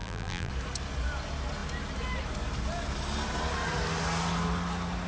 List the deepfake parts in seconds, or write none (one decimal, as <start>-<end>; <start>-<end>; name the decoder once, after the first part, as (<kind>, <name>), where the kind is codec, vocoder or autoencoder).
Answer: 0.0-0.5 (vocoder, BigVGAN v2)